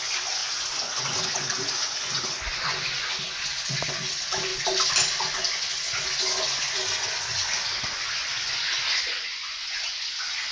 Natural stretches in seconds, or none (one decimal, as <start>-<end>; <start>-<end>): 4.5-5.2

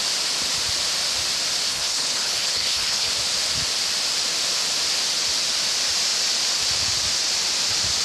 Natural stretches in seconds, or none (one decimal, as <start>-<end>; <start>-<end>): 0.0-1.7; 3.1-8.0

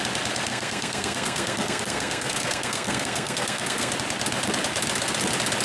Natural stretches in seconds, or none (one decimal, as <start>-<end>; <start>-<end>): 0.0-0.5; 3.9-5.6

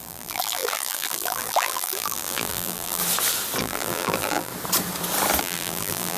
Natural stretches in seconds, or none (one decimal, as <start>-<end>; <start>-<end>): 3.0-3.6; 4.5-5.4

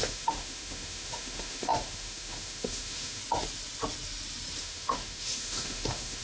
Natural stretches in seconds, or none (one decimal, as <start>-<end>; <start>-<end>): 3.2-4.6